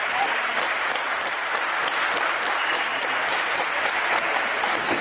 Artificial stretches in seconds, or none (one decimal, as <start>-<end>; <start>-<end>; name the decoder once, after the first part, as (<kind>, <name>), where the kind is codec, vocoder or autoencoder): none